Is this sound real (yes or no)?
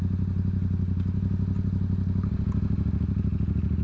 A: yes